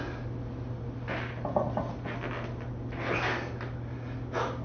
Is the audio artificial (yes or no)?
no